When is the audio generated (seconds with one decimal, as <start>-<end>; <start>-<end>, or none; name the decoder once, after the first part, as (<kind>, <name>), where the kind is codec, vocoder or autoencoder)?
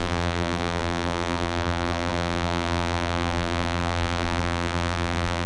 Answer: 0.0-5.5 (vocoder, BigVGAN v2)